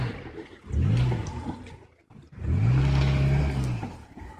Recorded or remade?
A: recorded